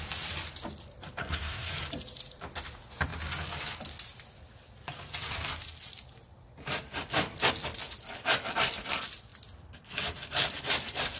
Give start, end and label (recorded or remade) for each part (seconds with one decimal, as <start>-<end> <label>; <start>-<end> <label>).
0.0-1.2 recorded; 1.2-1.7 remade; 1.7-11.2 recorded